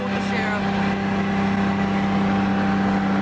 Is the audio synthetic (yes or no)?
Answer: no